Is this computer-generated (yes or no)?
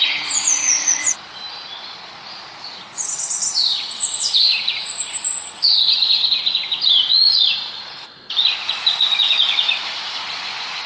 yes